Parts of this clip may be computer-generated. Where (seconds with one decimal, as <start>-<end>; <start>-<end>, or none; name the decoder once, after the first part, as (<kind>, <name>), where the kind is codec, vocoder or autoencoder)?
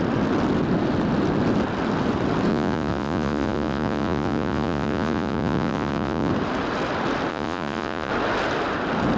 2.5-6.3 (vocoder, Vocos); 7.3-8.1